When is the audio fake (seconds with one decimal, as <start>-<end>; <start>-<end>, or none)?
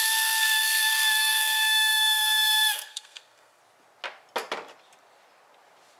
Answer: 0.0-3.6